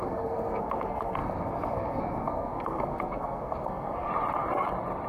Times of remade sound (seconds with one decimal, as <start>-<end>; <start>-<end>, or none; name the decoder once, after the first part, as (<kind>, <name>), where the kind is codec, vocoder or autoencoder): 0.0-4.1 (codec, SNAC)